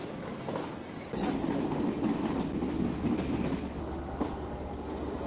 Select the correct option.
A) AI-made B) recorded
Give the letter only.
B